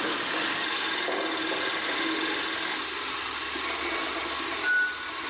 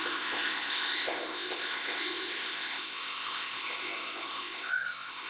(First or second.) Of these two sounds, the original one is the first